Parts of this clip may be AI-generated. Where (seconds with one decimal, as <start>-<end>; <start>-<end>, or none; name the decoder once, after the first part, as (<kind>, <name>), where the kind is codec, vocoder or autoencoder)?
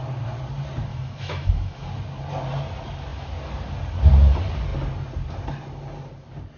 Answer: 0.9-1.9 (autoencoder, DAC-VAE)